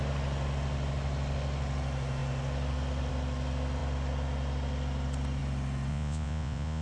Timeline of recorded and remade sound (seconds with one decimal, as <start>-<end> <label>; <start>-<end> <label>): 0.0-5.9 recorded; 5.9-6.8 remade